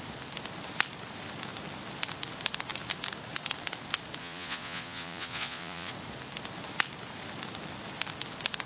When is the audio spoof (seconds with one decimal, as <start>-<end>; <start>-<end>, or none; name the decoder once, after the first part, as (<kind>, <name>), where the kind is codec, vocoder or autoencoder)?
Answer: 4.2-5.9 (vocoder, Vocos)